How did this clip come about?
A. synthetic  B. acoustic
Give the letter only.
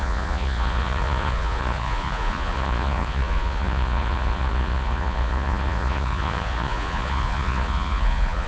A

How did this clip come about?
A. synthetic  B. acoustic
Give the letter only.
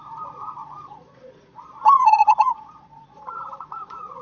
A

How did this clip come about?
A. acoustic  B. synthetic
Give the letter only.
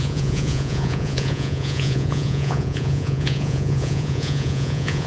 B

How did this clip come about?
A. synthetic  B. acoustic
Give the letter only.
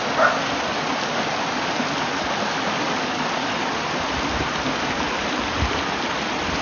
B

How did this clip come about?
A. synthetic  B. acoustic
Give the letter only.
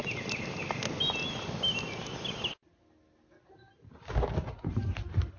B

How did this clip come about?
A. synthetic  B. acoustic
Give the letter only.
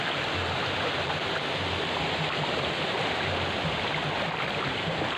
B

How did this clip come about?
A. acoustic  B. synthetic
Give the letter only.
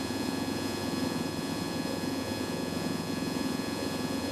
B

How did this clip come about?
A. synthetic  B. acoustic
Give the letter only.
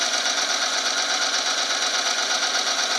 A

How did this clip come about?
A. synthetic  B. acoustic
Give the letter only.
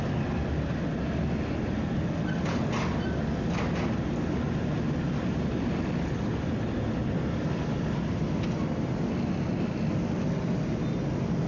B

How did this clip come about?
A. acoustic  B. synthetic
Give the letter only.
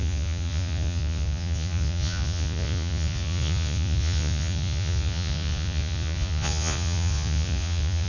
B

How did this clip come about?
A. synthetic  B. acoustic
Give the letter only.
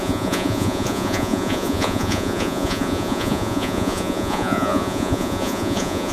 A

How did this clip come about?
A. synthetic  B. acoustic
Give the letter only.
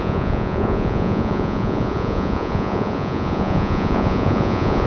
A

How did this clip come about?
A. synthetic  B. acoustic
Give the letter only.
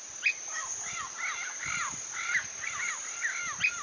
B